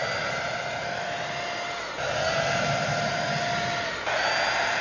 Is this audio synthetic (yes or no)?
no